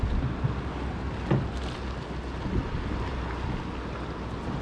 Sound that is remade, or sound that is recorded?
recorded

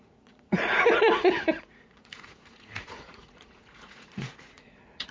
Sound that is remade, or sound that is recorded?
remade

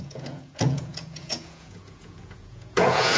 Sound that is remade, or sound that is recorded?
remade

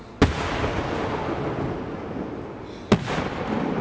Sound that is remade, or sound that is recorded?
recorded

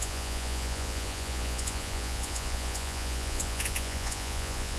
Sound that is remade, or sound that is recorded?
remade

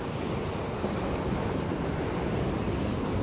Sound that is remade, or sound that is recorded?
recorded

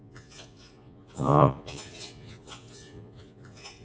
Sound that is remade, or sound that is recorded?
remade